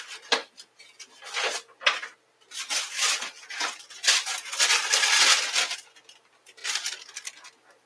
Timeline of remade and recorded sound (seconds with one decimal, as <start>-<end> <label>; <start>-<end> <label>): 0.0-7.9 recorded